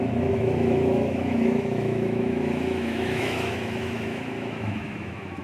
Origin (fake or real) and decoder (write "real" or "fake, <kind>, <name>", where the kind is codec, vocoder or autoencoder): fake, autoencoder, DAC-VAE